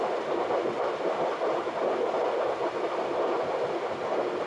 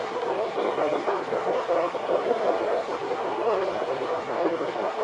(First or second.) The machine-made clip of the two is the second